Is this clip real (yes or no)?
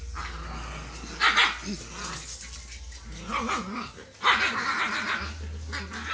yes